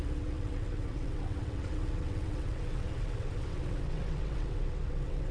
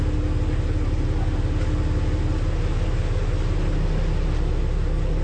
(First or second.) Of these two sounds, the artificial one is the first